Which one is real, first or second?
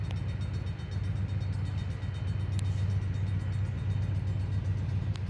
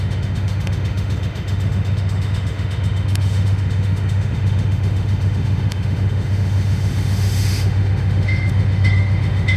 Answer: first